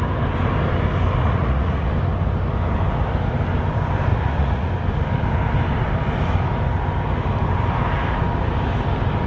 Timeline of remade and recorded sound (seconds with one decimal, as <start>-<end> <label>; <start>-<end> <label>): 0.0-1.2 recorded; 1.2-1.9 remade; 1.9-4.1 recorded; 4.1-4.7 remade; 4.7-9.3 recorded